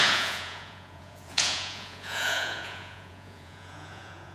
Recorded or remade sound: remade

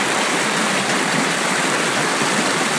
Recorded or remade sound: remade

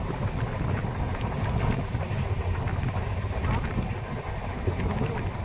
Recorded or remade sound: recorded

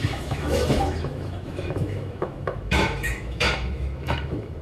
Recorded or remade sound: remade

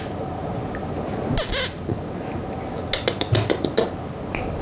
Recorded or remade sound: recorded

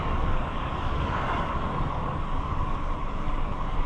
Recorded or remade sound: remade